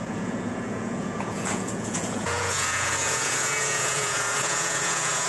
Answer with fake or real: fake